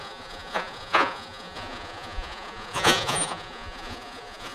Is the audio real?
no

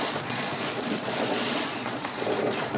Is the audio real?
no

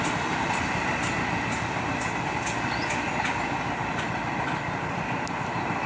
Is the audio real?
yes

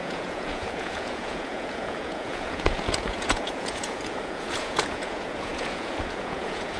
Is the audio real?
no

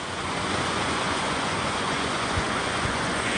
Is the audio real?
no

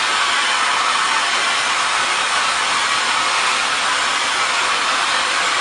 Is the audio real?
yes